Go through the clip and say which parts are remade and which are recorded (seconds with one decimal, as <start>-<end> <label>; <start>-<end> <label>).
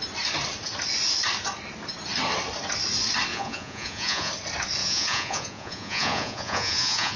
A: 0.0-3.3 recorded; 3.3-4.3 remade; 4.3-4.8 recorded; 4.8-7.2 remade